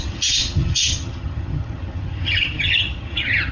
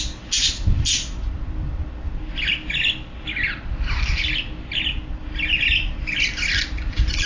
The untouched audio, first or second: second